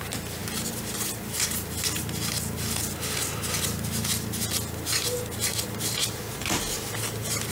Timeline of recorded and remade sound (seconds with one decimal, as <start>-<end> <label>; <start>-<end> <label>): 0.0-7.5 recorded